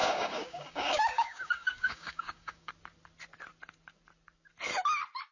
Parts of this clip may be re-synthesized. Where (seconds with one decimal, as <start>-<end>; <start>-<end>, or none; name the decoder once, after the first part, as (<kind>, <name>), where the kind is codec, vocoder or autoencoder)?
0.0-2.7 (codec, DAC)